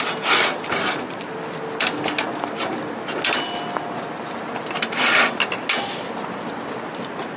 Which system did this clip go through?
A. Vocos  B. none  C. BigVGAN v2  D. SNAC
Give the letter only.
B